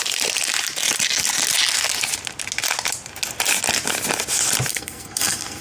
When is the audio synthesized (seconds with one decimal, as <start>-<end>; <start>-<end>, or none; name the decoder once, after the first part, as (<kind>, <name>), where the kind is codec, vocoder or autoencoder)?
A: 4.7-5.6 (codec, SNAC)